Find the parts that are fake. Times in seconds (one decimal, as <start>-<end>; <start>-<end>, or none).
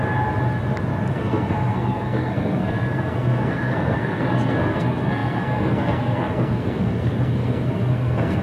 1.1-8.4